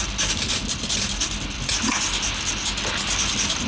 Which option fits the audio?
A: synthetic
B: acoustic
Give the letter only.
B